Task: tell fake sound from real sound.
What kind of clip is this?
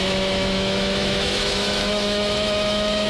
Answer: fake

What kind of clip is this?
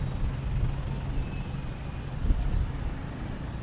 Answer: real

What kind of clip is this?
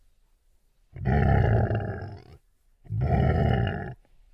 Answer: real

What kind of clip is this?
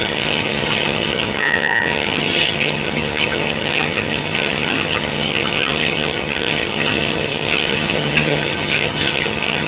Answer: fake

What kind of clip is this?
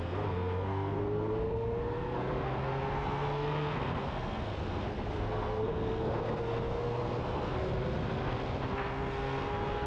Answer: fake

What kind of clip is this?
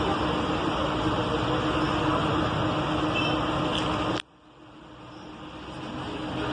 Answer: real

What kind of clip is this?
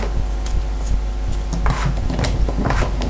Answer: real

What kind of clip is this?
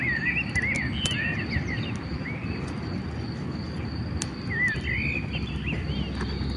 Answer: real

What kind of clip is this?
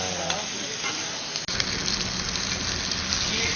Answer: real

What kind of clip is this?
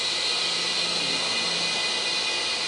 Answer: real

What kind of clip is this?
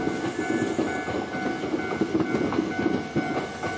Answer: real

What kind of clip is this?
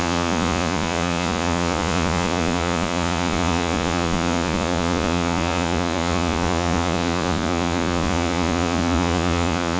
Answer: fake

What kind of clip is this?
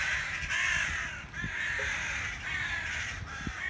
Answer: real